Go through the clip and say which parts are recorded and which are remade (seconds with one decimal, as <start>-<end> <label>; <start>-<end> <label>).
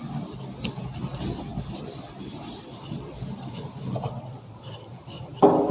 0.0-0.8 recorded; 0.8-5.7 remade